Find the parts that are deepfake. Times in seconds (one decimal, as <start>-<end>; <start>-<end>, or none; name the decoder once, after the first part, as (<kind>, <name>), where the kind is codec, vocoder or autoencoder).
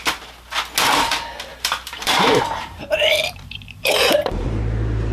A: 1.5-4.6 (vocoder, BigVGAN v2)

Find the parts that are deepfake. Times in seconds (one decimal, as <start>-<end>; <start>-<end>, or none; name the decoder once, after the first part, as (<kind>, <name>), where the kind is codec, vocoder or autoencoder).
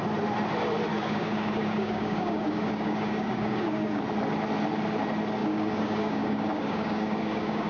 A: 0.9-4.0 (codec, DAC); 5.4-7.7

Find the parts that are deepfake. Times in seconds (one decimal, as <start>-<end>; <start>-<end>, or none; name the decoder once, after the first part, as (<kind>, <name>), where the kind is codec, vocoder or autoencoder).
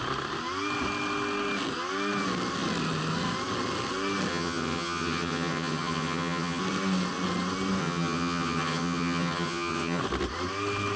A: 4.3-6.6 (vocoder, HiFi-GAN); 7.8-10.0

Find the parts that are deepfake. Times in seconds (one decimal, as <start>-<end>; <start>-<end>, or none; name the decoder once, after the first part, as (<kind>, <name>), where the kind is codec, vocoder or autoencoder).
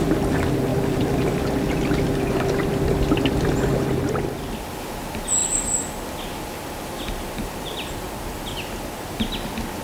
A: 0.7-1.4 (vocoder, BigVGAN v2); 2.7-3.3; 5.4-9.2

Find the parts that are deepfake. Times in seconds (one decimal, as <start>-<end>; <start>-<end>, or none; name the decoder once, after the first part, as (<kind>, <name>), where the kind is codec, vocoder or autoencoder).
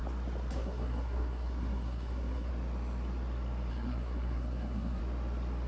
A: 0.5-2.5 (codec, SNAC); 3.7-5.0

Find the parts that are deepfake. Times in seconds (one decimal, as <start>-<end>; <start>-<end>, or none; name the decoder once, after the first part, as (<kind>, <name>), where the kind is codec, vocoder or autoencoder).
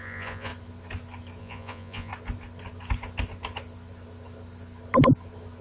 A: 0.0-0.5 (vocoder, Vocos); 1.4-2.1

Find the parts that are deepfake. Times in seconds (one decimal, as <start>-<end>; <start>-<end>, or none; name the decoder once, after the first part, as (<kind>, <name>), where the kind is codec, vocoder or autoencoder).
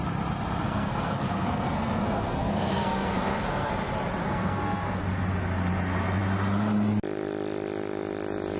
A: 0.6-3.7 (codec, SNAC); 4.2-5.0